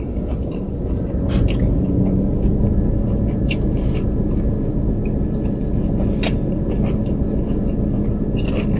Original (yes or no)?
yes